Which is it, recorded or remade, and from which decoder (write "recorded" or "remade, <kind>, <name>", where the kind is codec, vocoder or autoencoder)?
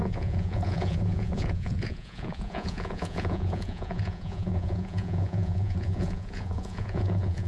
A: remade, vocoder, Vocos